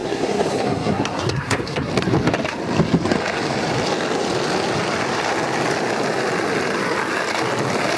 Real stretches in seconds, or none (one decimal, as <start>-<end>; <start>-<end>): 1.9-8.0

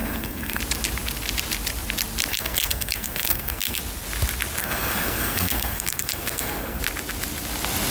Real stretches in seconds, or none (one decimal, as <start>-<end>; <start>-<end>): 0.6-2.3; 3.8-4.6; 6.8-7.9

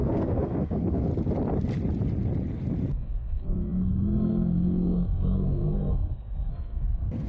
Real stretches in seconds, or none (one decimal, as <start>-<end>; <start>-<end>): 1.1-2.9

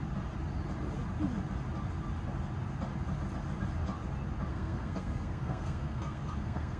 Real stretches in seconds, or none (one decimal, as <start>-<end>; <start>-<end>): 0.0-4.5

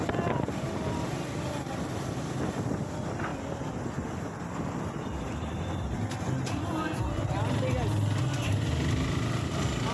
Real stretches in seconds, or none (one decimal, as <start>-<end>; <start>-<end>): 0.0-9.9

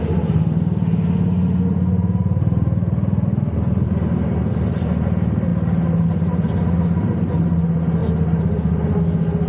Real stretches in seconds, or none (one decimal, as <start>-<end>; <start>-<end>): 0.0-9.5

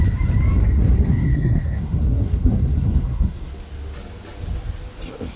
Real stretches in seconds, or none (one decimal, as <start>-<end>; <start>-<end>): 0.0-0.6; 3.5-5.4